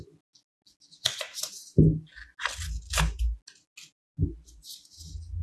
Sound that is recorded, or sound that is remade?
recorded